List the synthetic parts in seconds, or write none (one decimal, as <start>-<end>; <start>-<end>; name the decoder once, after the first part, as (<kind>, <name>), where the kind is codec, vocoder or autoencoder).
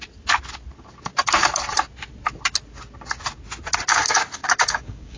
3.9-5.2 (codec, DAC)